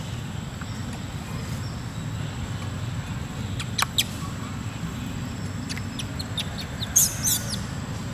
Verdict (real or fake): real